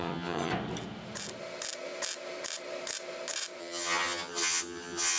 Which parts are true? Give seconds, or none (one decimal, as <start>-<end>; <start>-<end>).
0.5-3.6